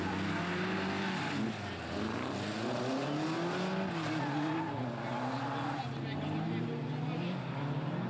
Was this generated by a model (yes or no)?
no